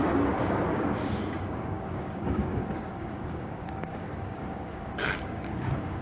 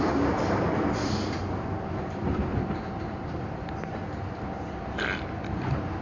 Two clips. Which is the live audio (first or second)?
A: second